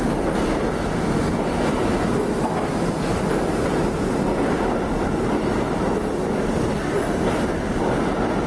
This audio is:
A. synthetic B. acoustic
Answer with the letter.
B